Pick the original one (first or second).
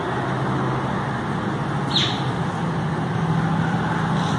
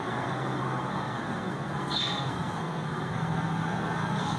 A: first